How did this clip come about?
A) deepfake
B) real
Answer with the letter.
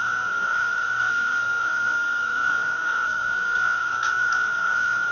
A